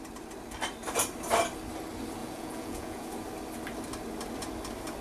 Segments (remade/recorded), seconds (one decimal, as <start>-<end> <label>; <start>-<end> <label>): 0.0-2.2 recorded; 2.2-3.1 remade; 3.1-5.0 recorded